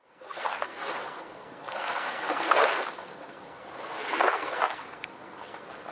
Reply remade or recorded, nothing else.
remade